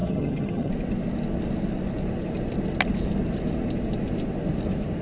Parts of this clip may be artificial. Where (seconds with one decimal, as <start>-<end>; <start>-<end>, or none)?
0.0-0.7